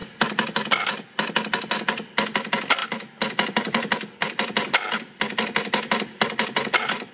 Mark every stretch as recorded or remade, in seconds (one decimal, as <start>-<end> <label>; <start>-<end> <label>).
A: 0.0-7.1 recorded